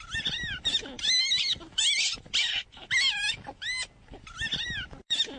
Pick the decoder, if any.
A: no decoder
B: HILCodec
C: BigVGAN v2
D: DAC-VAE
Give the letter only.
A